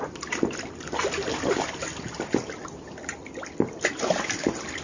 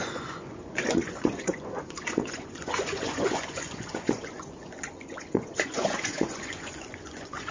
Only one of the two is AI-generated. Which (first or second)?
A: second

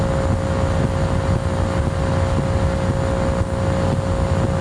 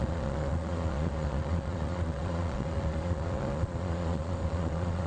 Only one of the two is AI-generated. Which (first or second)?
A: second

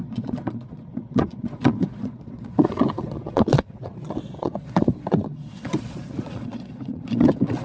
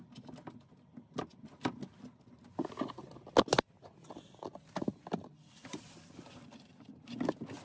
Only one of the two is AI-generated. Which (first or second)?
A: first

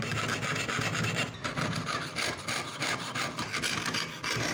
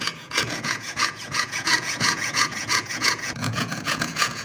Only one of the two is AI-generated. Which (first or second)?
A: second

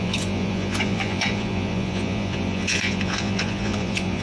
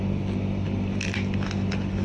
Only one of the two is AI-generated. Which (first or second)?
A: first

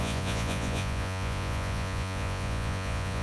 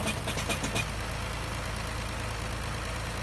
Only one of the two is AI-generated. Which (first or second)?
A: first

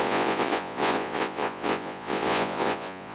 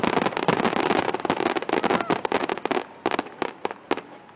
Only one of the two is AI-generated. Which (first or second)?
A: first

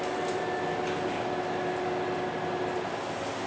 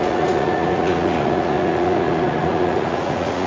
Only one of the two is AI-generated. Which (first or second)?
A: second